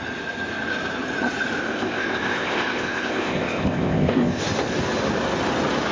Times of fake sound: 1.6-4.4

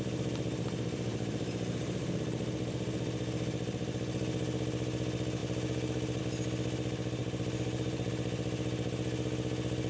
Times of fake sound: 1.1-2.1; 7.2-8.1

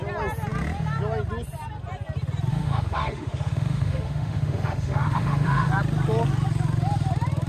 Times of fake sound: 2.5-5.7